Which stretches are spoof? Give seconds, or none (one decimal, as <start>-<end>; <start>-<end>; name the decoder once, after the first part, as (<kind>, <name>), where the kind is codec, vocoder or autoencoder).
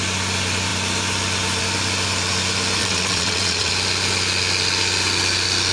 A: 2.8-3.7 (vocoder, WaveNeXt)